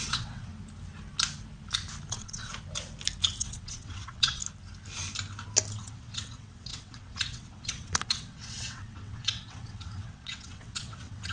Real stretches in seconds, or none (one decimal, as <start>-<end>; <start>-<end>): 0.5-2.1; 2.5-3.4; 4.4-5.7